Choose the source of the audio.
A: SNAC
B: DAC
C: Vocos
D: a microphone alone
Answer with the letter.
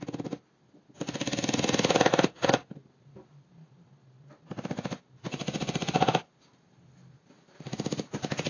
D